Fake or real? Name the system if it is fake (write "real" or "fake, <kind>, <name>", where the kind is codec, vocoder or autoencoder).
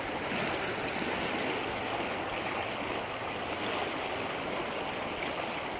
real